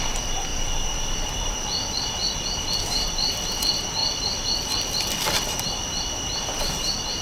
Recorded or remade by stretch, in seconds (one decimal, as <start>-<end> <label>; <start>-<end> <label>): 0.0-7.2 remade